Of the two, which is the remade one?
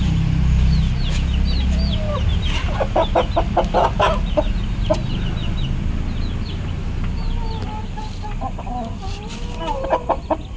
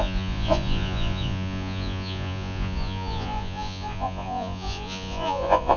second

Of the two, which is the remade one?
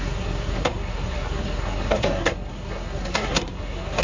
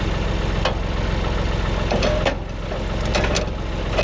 first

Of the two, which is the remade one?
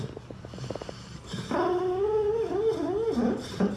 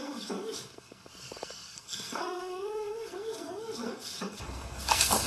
second